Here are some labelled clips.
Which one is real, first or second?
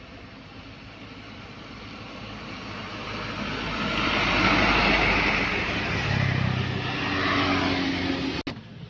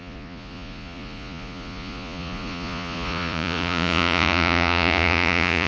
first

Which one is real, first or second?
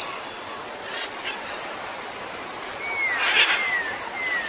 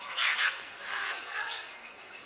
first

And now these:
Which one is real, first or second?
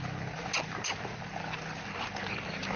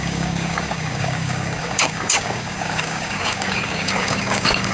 first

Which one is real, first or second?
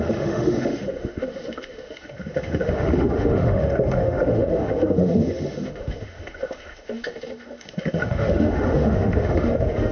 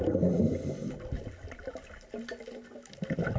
second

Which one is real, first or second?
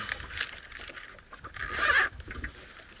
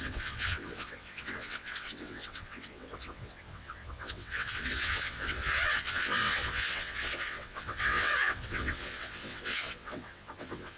first